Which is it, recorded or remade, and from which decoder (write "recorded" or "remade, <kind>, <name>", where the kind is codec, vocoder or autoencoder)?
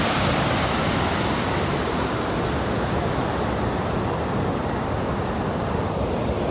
remade, vocoder, BigVGAN v2